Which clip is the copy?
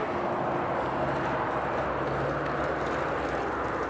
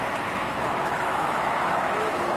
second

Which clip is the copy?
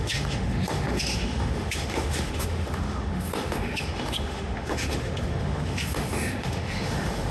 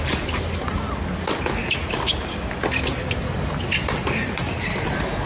first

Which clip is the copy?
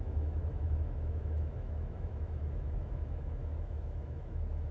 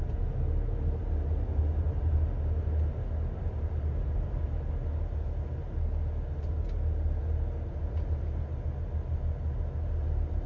first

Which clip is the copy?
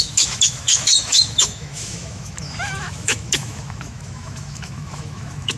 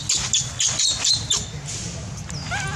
first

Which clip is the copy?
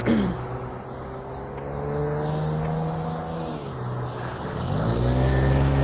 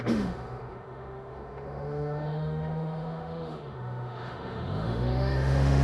second